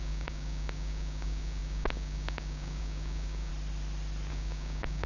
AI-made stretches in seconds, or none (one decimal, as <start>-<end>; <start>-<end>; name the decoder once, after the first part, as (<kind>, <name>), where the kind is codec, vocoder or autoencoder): 0.0-3.5 (codec, DAC); 4.3-5.1